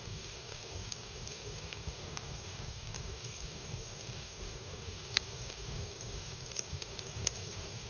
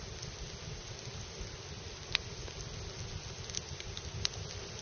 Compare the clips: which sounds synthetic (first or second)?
first